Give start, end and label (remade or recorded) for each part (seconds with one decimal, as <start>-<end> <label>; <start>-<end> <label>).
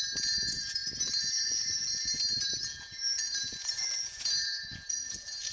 0.0-5.5 remade